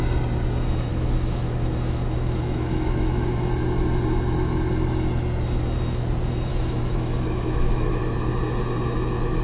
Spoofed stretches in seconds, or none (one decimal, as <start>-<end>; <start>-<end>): 0.9-3.5; 6.5-8.0

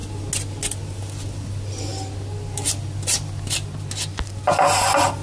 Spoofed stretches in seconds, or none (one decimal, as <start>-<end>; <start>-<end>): none

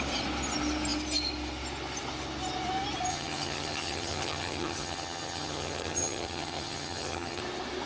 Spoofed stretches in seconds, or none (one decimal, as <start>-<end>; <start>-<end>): 3.1-7.4

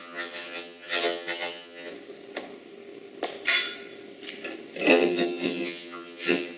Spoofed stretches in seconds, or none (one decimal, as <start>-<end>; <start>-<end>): 0.0-1.9; 4.9-6.6